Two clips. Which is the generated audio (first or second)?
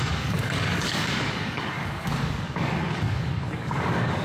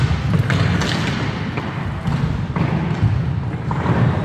first